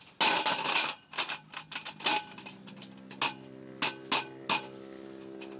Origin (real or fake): real